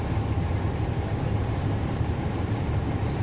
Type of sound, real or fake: fake